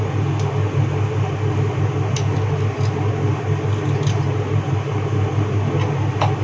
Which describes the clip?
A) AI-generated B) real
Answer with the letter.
B